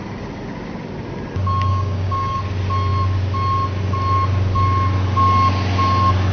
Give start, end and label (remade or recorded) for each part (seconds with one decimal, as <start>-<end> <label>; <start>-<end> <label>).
0.0-1.7 recorded; 1.7-2.4 remade; 2.4-6.3 recorded

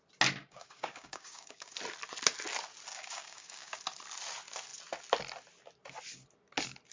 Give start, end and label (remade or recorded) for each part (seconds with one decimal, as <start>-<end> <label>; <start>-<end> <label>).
0.0-0.4 recorded; 0.4-1.7 remade; 1.7-2.9 recorded; 2.9-3.8 remade; 3.8-6.9 recorded

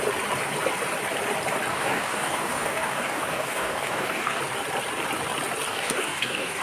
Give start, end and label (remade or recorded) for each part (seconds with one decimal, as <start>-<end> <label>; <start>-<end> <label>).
0.0-1.7 recorded; 1.7-4.4 remade; 4.4-5.7 recorded; 5.7-6.6 remade